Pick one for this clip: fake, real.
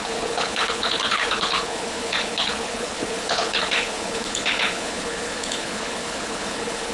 fake